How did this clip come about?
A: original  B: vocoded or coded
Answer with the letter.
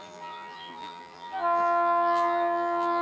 B